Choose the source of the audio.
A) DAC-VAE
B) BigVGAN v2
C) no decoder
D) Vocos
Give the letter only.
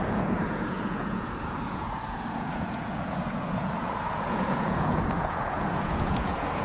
D